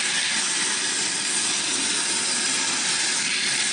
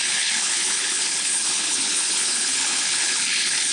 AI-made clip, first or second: second